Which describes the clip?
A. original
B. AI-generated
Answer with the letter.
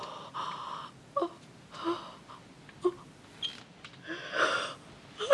A